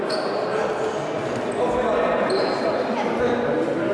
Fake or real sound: real